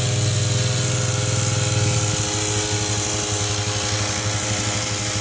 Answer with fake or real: real